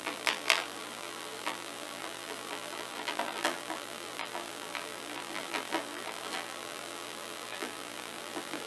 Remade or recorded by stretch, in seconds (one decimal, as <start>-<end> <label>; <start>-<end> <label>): 0.0-8.7 remade